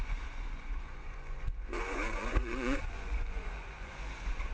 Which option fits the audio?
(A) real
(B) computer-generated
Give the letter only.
B